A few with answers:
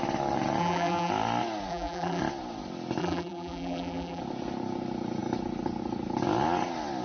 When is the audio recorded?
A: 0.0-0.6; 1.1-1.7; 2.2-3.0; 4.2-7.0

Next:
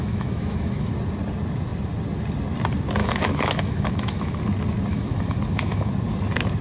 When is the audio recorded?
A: 0.9-3.0; 4.4-4.9; 5.9-6.6